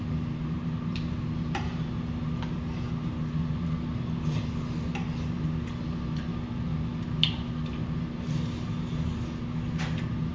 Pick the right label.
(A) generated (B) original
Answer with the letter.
B